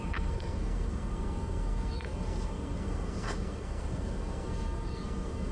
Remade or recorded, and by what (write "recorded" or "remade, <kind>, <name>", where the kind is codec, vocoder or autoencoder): remade, codec, SNAC